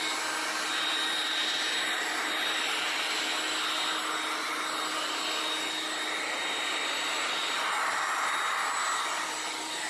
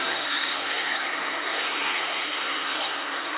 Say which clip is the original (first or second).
first